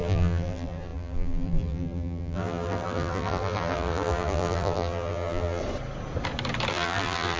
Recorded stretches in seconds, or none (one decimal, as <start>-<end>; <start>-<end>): 5.6-6.7